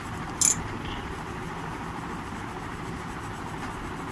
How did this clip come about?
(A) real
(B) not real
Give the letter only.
A